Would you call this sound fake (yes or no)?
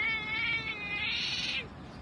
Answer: no